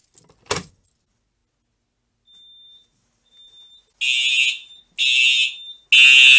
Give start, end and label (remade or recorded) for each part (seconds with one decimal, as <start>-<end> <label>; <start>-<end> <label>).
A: 0.0-6.4 recorded